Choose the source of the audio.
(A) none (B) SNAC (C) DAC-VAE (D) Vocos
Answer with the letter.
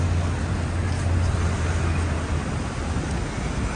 A